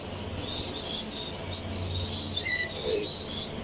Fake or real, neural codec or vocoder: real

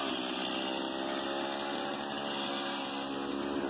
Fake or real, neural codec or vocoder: real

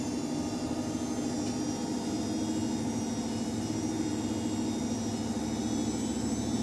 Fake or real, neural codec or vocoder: real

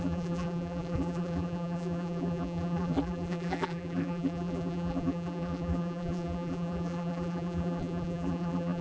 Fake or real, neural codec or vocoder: fake, vocoder, BigVGAN v2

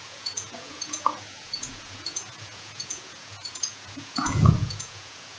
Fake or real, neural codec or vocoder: fake, vocoder, Vocos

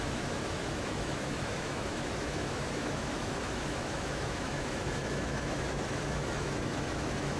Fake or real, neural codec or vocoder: fake, autoencoder, DAC-VAE